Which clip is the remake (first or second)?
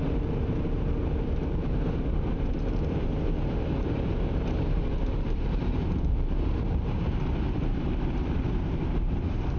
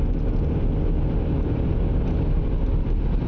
first